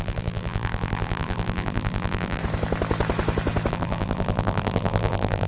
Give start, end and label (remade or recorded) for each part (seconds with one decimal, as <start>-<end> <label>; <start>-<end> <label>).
0.0-2.4 remade; 2.4-3.7 recorded; 3.7-5.5 remade